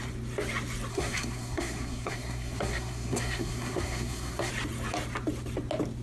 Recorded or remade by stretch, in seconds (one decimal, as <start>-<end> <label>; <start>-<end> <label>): 0.0-0.9 recorded; 0.9-4.5 remade; 4.5-6.0 recorded

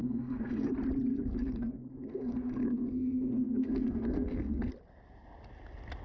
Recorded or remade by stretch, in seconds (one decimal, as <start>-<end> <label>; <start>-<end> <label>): 0.0-0.7 remade; 0.7-1.1 recorded; 1.1-4.7 remade; 4.7-6.0 recorded

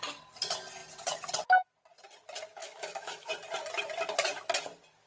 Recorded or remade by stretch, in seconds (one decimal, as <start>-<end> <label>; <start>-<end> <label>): 0.0-2.6 recorded; 2.6-3.3 remade; 3.3-5.1 recorded

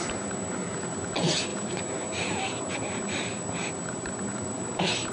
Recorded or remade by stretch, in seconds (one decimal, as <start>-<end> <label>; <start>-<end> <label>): 0.0-5.1 recorded